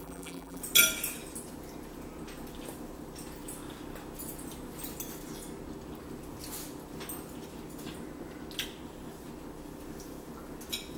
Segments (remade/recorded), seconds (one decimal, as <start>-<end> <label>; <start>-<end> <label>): 0.0-0.6 remade; 0.6-11.0 recorded